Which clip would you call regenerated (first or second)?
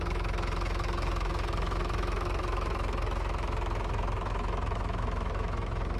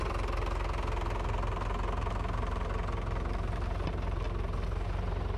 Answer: first